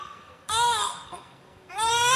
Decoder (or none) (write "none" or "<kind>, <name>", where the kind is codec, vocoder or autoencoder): codec, SNAC